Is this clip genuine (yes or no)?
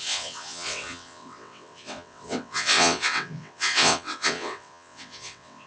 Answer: no